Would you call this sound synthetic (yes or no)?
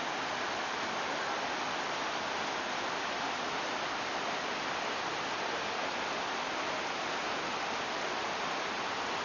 no